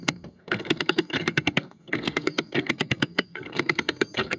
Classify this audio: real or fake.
fake